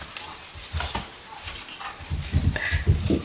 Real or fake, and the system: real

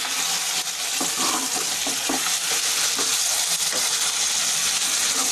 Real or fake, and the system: real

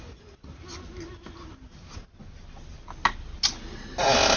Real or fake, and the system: real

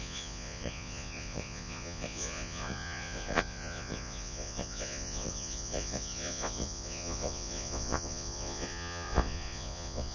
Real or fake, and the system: fake, vocoder, Vocos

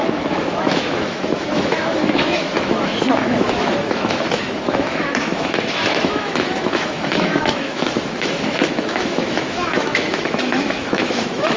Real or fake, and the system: fake, autoencoder, DAC-VAE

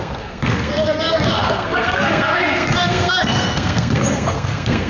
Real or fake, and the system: fake, codec, SNAC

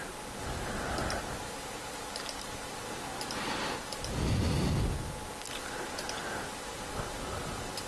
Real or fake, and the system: real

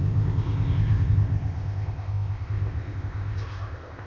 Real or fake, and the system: fake, codec, ZipCodec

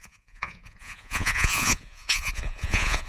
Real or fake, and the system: fake, vocoder, Vocos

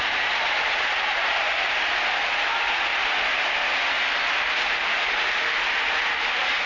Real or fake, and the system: real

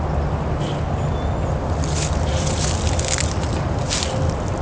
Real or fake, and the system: real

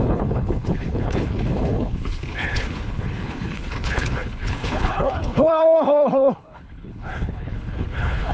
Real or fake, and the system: fake, codec, HILCodec